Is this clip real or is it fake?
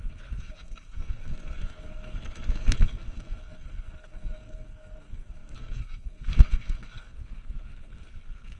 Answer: fake